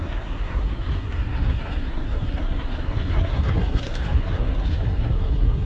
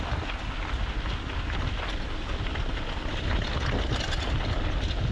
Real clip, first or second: second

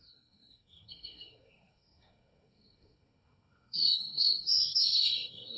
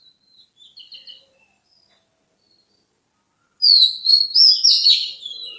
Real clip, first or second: second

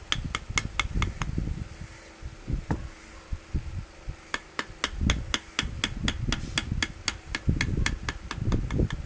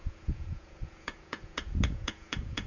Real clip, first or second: first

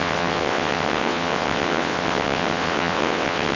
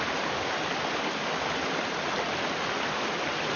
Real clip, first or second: second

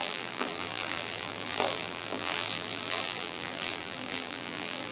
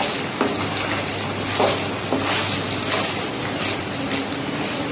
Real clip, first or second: second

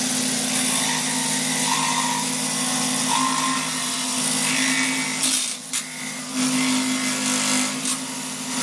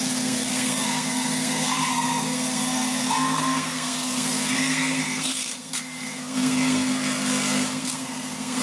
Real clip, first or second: first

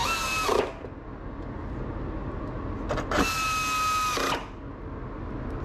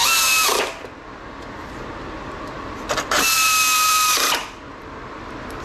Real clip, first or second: first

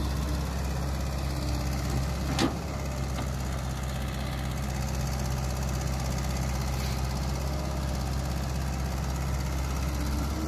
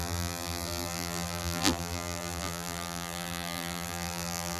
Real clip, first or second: first